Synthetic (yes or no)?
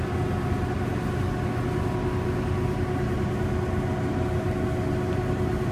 no